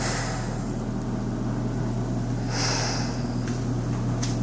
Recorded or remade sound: recorded